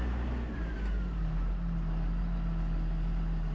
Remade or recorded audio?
recorded